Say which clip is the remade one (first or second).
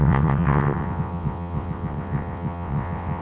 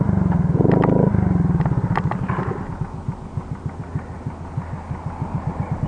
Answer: first